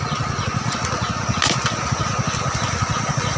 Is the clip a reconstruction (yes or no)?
no